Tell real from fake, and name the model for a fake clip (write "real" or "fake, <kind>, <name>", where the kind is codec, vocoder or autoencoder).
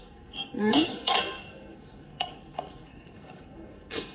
fake, codec, SNAC